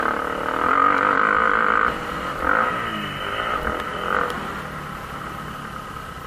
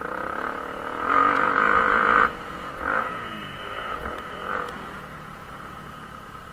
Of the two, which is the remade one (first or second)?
second